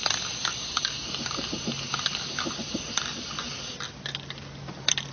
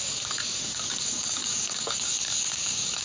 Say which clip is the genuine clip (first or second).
first